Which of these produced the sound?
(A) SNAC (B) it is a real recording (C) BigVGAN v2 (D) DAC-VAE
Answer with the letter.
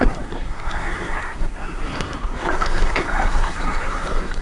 A